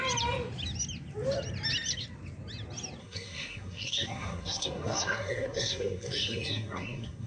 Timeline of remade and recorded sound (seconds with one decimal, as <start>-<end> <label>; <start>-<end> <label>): 0.0-3.0 recorded; 3.0-7.3 remade

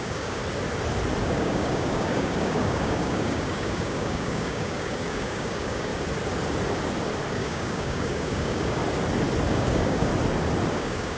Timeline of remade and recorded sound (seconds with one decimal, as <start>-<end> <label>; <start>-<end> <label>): 0.0-0.4 remade; 0.4-1.2 recorded; 1.2-5.9 remade; 5.9-7.3 recorded; 7.3-8.8 remade; 8.8-9.5 recorded; 9.5-10.1 remade; 10.1-10.7 recorded; 10.7-11.2 remade

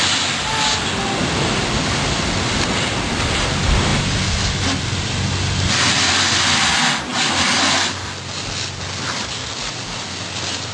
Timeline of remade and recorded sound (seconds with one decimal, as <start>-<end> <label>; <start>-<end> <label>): 0.0-10.7 recorded

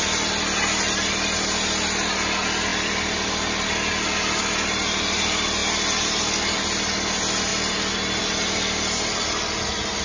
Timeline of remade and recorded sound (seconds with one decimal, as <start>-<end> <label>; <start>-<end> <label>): 0.0-10.0 recorded

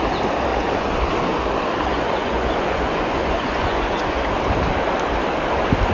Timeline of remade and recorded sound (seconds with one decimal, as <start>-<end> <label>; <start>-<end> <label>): 0.0-0.5 recorded; 0.5-1.1 remade; 1.1-1.9 recorded; 1.9-4.2 remade; 4.2-5.9 recorded

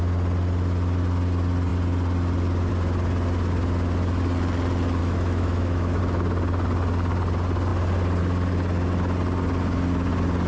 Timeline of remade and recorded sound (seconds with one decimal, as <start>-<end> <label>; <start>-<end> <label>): 0.0-5.0 recorded; 5.0-6.0 remade; 6.0-10.5 recorded

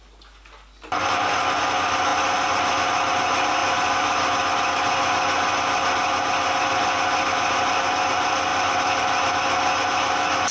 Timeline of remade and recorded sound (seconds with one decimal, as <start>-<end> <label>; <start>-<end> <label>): 0.0-2.1 recorded; 2.1-2.7 remade; 2.7-3.6 recorded; 3.6-4.4 remade; 4.4-10.5 recorded